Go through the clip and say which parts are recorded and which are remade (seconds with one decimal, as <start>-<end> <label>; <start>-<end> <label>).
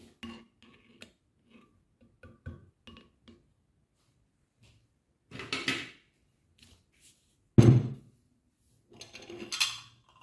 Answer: 0.0-10.2 recorded